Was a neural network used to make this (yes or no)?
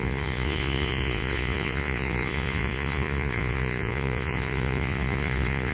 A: yes